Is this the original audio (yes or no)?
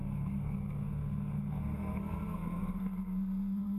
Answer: no